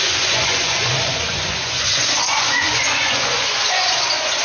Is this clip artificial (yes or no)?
yes